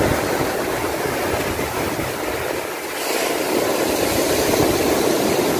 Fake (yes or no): no